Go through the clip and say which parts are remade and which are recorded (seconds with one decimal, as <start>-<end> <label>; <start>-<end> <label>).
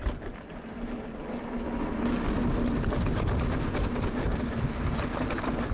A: 0.0-5.7 recorded